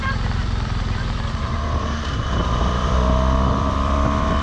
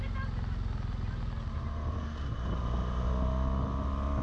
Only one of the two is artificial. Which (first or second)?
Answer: first